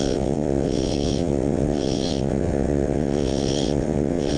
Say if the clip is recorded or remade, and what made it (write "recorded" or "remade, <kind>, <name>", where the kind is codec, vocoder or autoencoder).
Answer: remade, vocoder, WaveNeXt